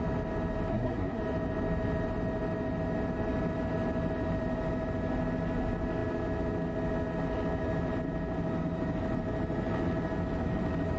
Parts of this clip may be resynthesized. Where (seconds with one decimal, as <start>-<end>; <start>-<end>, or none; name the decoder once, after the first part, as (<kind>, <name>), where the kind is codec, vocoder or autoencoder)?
0.7-1.2 (codec, SNAC)